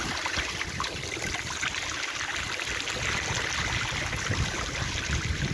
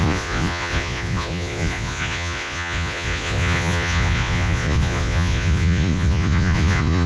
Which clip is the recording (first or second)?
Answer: first